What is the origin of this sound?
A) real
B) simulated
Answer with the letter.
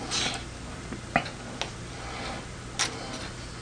A